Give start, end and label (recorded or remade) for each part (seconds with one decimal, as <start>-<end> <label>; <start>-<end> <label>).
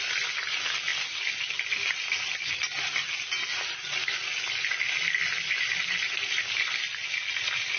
0.0-7.8 recorded